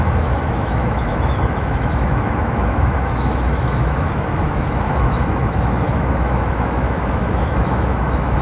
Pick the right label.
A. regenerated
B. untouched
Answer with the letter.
A